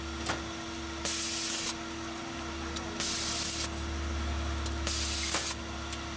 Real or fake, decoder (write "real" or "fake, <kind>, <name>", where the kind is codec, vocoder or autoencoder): real